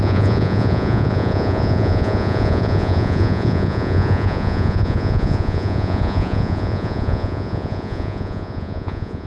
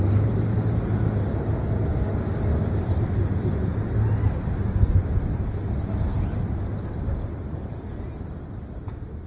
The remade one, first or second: first